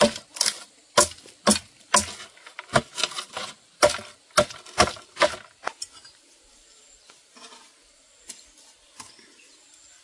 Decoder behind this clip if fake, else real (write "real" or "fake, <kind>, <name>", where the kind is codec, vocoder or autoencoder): real